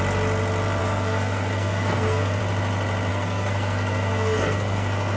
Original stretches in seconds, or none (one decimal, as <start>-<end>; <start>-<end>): 0.0-0.8; 2.4-3.1